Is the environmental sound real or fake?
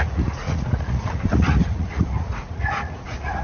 fake